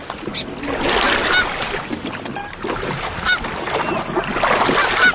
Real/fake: real